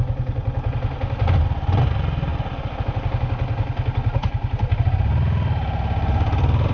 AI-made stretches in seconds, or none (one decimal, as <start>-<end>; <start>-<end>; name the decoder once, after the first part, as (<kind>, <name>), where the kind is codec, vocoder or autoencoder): none